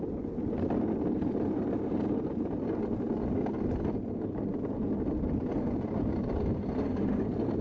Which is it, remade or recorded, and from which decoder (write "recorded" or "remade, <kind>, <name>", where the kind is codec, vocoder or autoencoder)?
recorded